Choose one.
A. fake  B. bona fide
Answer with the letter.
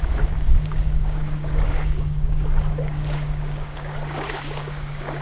A